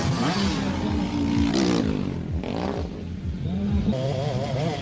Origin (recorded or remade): recorded